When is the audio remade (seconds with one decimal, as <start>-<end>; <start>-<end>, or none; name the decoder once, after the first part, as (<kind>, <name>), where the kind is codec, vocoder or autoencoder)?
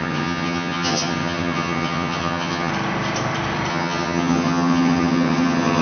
0.0-2.7 (vocoder, HiFi-GAN); 3.7-5.8